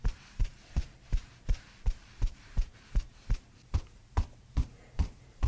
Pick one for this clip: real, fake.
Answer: fake